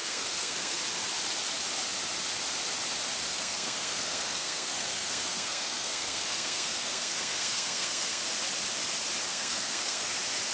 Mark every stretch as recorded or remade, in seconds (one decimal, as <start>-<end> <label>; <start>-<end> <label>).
0.0-0.8 remade; 0.8-3.3 recorded; 3.3-8.2 remade; 8.2-9.3 recorded; 9.3-10.1 remade; 10.1-10.5 recorded